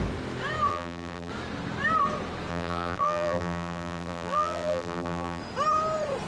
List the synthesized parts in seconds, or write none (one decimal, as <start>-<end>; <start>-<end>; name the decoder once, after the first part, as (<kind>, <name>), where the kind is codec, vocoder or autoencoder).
0.7-1.3 (vocoder, BigVGAN v2); 2.5-5.4